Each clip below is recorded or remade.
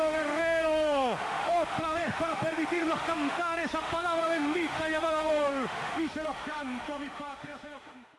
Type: remade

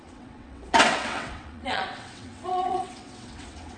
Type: remade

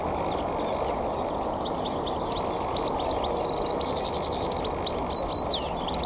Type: recorded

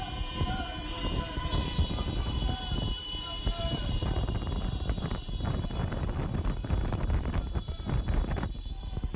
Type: remade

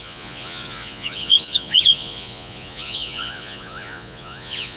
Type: remade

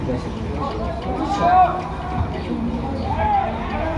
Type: recorded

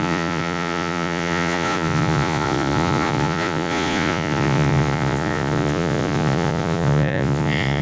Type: remade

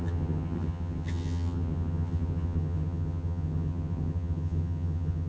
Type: remade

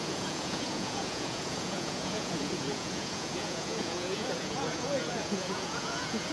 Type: remade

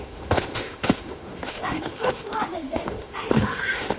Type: remade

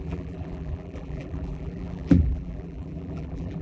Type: remade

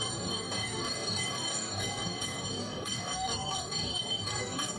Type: remade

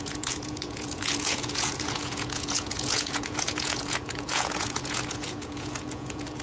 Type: remade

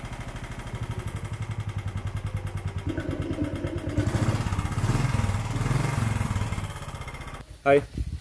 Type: recorded